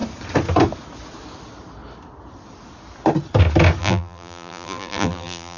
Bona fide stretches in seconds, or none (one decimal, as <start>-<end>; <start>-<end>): 0.0-3.8